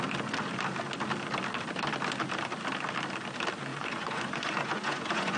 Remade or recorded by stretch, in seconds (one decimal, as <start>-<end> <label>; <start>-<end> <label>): 0.0-3.7 recorded; 3.7-5.4 remade